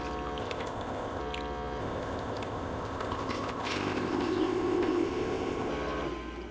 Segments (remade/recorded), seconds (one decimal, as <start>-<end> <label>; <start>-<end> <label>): 0.0-0.4 recorded; 0.4-1.2 remade; 1.2-1.8 recorded; 1.8-5.7 remade; 5.7-6.5 recorded